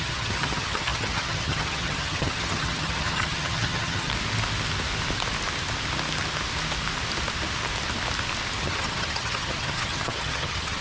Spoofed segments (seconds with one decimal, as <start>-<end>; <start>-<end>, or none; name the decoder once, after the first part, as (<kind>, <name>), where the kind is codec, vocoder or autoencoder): 0.0-4.1 (vocoder, HiFi-GAN); 8.6-10.8